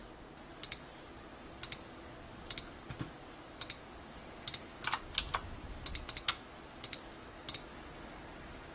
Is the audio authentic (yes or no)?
yes